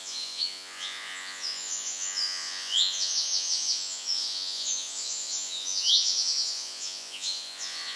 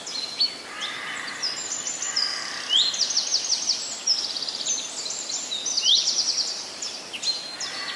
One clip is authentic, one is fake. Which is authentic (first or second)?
second